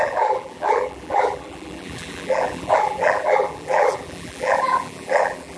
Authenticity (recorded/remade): remade